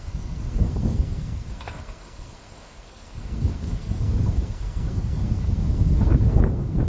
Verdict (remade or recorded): remade